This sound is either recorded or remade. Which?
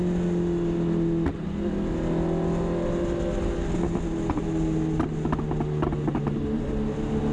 recorded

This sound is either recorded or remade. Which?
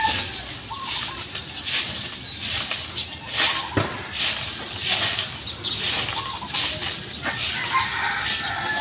recorded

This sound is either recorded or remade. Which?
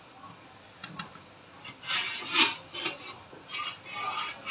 recorded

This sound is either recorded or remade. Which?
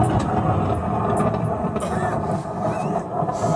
recorded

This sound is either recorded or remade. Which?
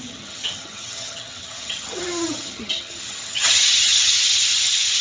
remade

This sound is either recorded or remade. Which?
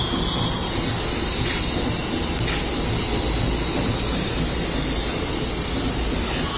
recorded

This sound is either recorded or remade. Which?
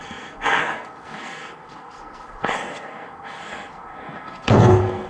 remade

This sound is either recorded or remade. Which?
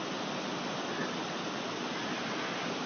recorded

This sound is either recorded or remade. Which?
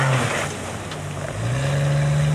recorded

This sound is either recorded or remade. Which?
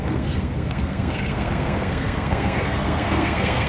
remade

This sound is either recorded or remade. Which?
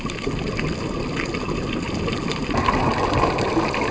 recorded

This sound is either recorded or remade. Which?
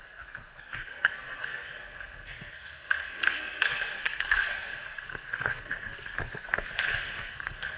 remade